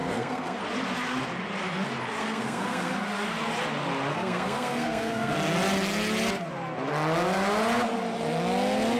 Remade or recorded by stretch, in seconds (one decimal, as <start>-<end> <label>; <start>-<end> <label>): 0.0-0.6 remade; 0.6-2.2 recorded; 2.2-2.9 remade; 2.9-4.1 recorded; 4.1-5.3 remade; 5.3-9.0 recorded